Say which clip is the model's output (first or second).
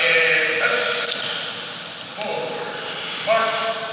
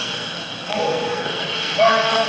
second